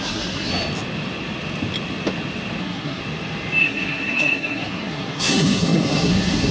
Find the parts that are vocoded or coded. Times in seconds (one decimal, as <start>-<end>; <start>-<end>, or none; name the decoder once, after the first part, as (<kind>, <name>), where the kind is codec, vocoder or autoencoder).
0.0-0.5 (codec, SNAC); 2.6-3.0; 3.6-6.5